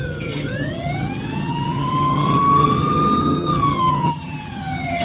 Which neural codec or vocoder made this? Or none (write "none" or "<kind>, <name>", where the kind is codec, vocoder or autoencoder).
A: vocoder, HiFi-GAN